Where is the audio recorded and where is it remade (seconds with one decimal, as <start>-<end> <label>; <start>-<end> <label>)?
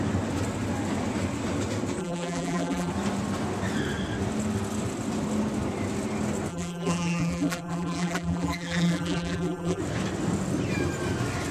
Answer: 0.0-2.0 recorded; 2.0-2.9 remade; 2.9-6.5 recorded; 6.5-9.8 remade; 9.8-11.5 recorded